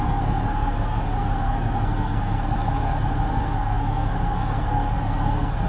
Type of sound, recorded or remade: remade